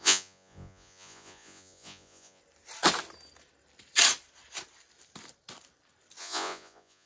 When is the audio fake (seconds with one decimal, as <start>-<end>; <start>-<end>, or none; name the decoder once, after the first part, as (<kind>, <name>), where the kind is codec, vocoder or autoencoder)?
0.0-2.4 (vocoder, Vocos); 6.2-7.1